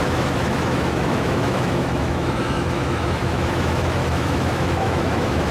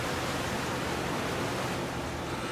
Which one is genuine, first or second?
second